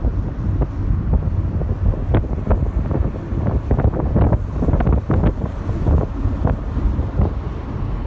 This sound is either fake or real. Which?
real